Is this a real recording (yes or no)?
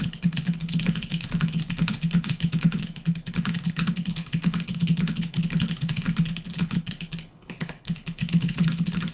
no